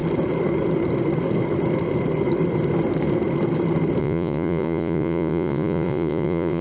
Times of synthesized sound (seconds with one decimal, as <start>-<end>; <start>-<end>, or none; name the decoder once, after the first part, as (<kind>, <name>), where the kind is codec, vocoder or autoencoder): 4.0-6.6 (vocoder, Vocos)